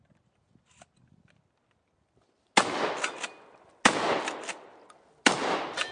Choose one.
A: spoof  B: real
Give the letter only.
B